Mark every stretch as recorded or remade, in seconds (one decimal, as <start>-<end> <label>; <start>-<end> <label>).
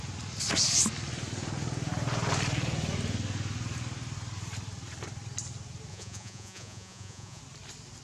0.0-5.9 recorded; 5.9-7.4 remade; 7.4-8.0 recorded